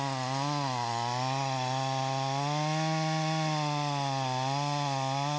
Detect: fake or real real